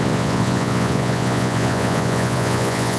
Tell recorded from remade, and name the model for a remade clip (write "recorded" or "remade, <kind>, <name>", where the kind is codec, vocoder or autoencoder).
remade, vocoder, Vocos